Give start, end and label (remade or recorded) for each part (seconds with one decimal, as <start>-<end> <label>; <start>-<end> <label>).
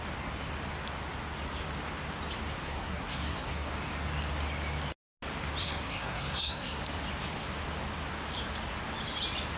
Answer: 0.0-2.6 recorded; 2.6-3.7 remade; 3.7-5.6 recorded; 5.6-6.8 remade; 6.8-9.6 recorded